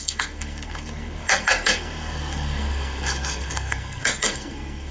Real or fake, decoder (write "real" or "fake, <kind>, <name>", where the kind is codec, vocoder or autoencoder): fake, codec, SNAC